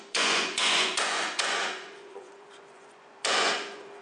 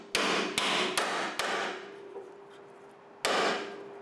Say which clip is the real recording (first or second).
second